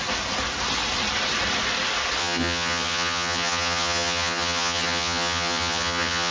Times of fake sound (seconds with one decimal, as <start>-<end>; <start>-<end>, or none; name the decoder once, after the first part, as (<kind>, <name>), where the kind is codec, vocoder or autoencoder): 2.2-6.3 (vocoder, HiFi-GAN)

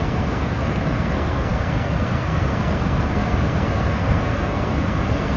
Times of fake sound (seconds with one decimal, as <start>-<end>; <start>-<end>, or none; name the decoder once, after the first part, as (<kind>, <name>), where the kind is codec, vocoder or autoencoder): 0.0-5.4 (codec, SNAC)

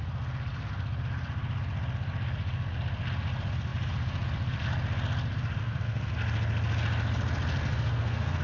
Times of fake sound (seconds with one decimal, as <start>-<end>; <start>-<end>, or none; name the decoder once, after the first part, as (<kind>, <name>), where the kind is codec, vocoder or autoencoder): 5.6-6.1 (codec, SNAC); 7.6-8.4

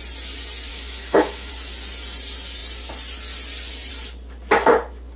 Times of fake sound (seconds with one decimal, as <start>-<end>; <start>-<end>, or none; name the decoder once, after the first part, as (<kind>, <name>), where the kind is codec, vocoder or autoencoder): 0.7-1.5 (codec, DAC)

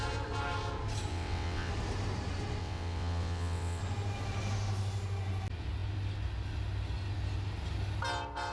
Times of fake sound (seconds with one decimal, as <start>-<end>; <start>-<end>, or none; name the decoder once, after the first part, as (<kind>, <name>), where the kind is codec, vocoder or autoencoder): 1.1-1.7 (vocoder, WaveNeXt); 2.6-3.8

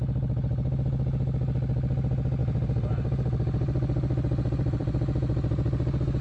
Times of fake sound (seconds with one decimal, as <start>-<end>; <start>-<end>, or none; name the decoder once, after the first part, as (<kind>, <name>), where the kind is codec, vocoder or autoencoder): 2.4-6.2 (vocoder, BigVGAN v2)